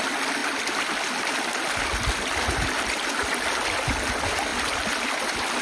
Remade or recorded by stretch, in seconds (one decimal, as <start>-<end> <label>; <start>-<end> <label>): 0.0-5.6 recorded

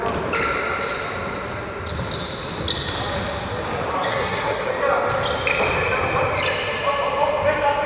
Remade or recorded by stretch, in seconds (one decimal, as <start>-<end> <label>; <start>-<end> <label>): 0.0-4.1 recorded; 4.1-4.7 remade; 4.7-7.9 recorded

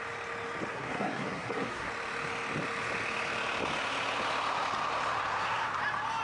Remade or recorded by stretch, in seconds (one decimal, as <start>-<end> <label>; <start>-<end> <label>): 0.0-0.7 recorded; 0.7-1.9 remade; 1.9-5.3 recorded; 5.3-5.8 remade; 5.8-6.2 recorded

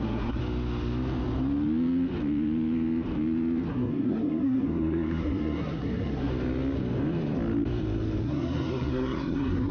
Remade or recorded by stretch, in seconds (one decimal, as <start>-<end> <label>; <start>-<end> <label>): 0.0-0.4 remade; 0.4-3.7 recorded; 3.7-6.3 remade; 6.3-8.2 recorded; 8.2-9.7 remade

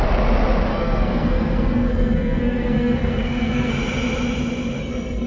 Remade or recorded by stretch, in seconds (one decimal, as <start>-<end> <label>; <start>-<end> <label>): 0.0-0.7 recorded; 0.7-3.7 remade; 3.7-4.8 recorded; 4.8-5.3 remade